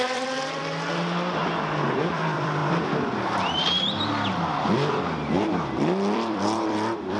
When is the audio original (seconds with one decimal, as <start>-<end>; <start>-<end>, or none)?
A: 1.4-2.0; 2.6-4.9